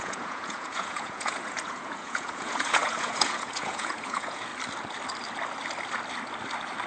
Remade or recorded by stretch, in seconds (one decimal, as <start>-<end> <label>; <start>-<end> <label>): 0.0-4.5 remade; 4.5-6.9 recorded